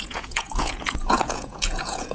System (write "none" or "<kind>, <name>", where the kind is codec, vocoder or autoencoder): vocoder, Vocos